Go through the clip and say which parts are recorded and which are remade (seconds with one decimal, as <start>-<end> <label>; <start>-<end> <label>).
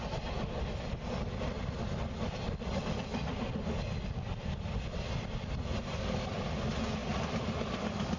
0.0-8.2 recorded